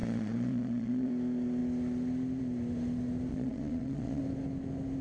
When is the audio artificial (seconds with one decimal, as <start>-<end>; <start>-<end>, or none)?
0.0-1.1; 3.3-4.2